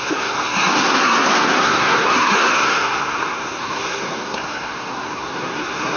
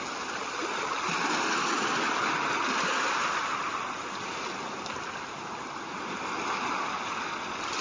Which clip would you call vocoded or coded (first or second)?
first